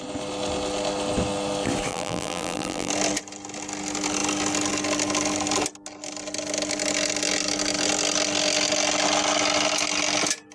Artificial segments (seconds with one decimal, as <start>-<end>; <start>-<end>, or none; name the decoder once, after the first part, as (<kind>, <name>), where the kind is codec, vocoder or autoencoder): 1.9-2.9 (vocoder, BigVGAN v2)